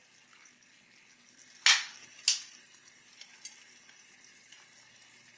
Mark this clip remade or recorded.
recorded